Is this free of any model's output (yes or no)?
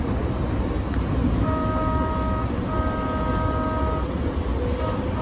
yes